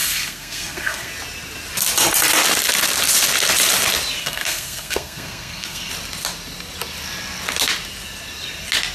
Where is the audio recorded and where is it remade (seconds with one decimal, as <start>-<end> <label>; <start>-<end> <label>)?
0.0-1.1 remade; 1.1-4.2 recorded; 4.2-5.9 remade; 5.9-8.9 recorded